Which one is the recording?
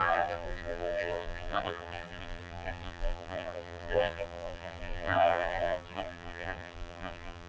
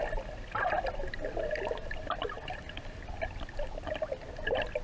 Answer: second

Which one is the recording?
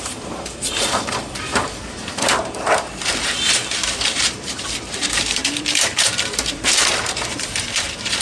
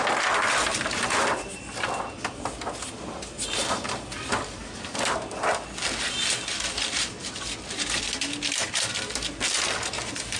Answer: second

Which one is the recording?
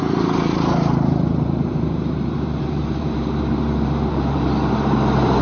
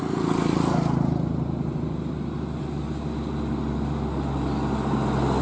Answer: second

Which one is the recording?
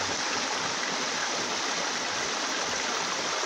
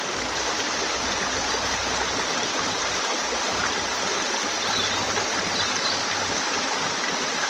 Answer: first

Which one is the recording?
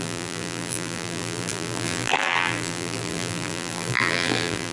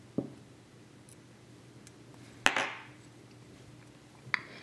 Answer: second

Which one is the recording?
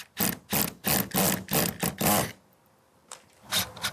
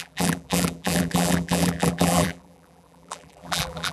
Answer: first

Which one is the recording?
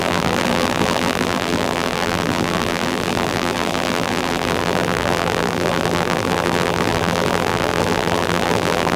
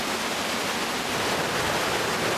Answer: second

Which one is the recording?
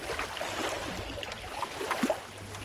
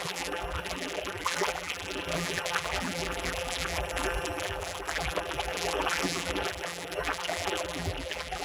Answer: first